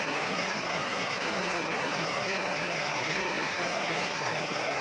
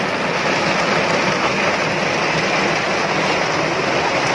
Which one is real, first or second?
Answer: second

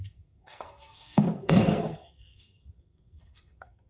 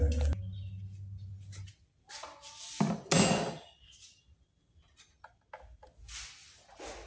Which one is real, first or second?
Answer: second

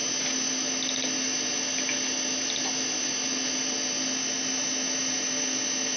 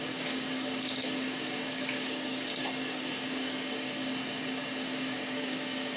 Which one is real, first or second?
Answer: first